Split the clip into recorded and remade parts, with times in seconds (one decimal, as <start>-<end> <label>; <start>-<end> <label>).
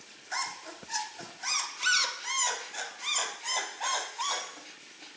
0.0-5.2 recorded